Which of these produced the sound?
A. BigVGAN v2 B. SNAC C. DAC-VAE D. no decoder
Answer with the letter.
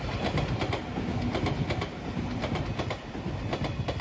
D